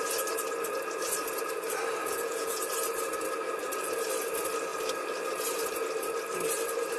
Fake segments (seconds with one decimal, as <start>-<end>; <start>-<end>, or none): 2.0-2.6